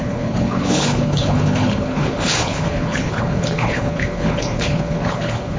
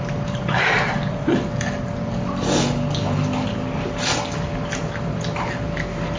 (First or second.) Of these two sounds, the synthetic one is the first